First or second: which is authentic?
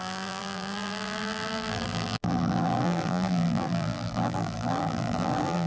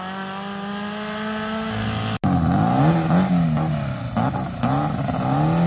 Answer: second